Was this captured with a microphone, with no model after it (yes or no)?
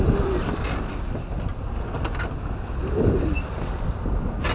yes